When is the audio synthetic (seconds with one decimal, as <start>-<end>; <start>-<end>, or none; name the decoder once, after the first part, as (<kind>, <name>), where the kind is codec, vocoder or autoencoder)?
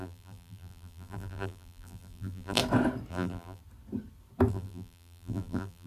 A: 0.0-2.6 (vocoder, BigVGAN v2); 3.1-3.6; 4.5-5.9